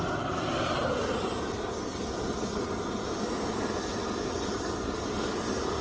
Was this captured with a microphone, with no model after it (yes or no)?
yes